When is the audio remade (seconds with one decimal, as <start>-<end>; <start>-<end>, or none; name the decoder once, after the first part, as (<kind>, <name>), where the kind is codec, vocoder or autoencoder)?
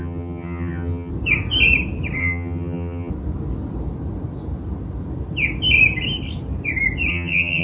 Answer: 0.0-1.1 (vocoder, HiFi-GAN); 2.2-3.1; 7.1-7.6